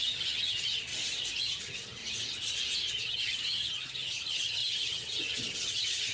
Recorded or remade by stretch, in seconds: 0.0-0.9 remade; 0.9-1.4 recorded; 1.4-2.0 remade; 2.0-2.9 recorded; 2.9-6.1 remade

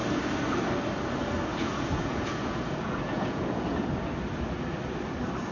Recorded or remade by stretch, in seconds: 0.0-1.5 recorded; 1.5-3.9 remade; 3.9-5.5 recorded

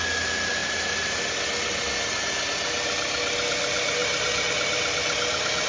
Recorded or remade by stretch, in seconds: 0.0-5.7 recorded